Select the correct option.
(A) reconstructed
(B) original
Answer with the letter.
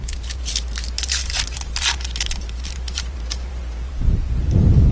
A